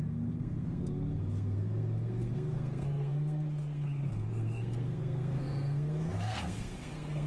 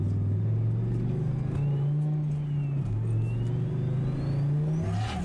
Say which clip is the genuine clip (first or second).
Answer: second